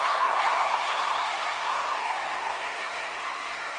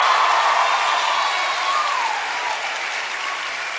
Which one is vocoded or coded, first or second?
first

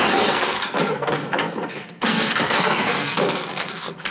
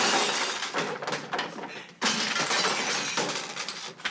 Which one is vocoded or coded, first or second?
first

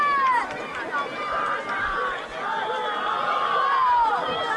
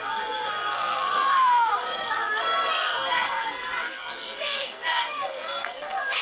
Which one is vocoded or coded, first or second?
second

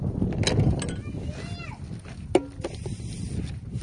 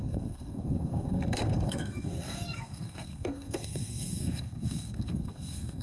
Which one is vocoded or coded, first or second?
second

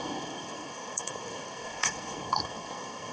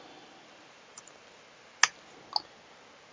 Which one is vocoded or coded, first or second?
first